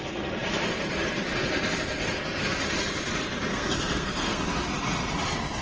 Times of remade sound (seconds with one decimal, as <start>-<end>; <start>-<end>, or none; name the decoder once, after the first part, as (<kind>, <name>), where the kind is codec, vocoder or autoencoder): 3.5-4.4 (codec, SNAC)